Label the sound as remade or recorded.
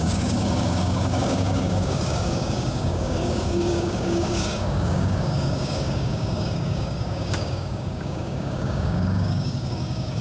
remade